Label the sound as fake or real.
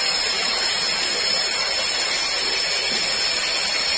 real